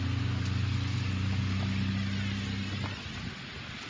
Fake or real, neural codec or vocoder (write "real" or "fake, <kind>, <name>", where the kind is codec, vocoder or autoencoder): real